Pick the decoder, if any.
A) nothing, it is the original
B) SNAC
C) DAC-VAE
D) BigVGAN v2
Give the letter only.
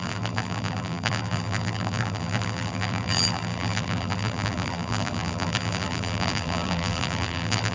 D